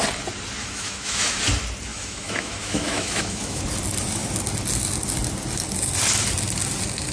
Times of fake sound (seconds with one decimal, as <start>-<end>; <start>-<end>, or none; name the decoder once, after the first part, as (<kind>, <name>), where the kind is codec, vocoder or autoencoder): 0.6-1.4 (autoencoder, DAC-VAE); 1.9-3.6